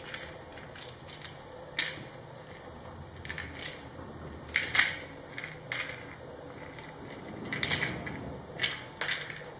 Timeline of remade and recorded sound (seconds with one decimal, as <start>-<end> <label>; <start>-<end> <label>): 0.0-9.6 recorded